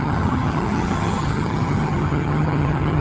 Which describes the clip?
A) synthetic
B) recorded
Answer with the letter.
A